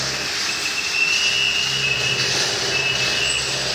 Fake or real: real